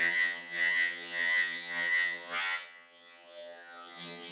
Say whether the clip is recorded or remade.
remade